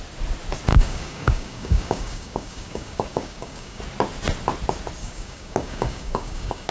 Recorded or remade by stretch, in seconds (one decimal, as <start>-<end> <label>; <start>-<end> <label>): 0.0-0.7 recorded; 0.7-3.8 remade; 3.8-5.0 recorded; 5.0-6.7 remade